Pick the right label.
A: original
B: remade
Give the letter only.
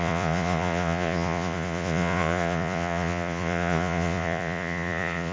B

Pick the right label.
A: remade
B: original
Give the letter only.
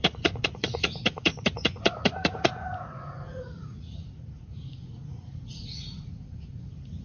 A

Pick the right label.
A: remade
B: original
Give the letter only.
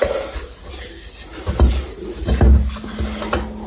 B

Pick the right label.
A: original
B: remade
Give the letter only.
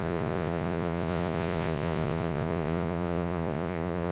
B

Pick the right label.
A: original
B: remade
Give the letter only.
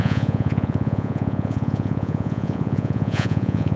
B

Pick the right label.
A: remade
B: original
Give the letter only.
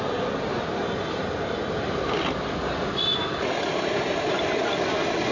B